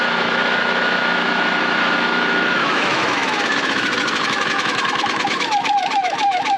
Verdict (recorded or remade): remade